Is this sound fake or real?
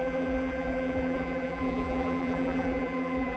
fake